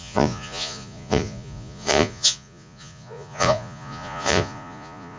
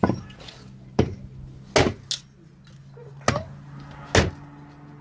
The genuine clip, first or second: second